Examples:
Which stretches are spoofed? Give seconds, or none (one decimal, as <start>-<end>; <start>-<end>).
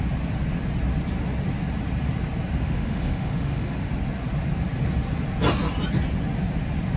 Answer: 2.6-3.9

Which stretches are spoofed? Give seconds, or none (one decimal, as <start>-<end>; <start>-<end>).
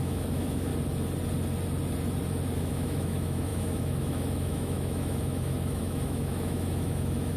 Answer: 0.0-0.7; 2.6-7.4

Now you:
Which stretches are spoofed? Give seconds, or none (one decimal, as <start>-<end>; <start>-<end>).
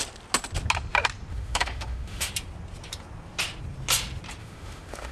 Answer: 1.3-2.3; 4.4-5.1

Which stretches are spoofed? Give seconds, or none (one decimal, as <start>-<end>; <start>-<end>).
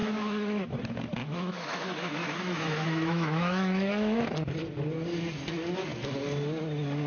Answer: 0.0-0.7; 1.2-4.2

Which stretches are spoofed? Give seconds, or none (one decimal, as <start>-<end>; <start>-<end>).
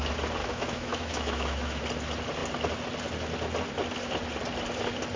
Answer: 0.4-1.8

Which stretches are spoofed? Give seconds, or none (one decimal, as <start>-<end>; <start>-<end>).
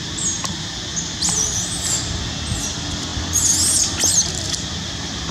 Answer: none